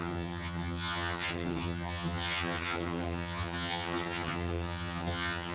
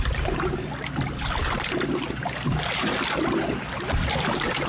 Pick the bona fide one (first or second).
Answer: second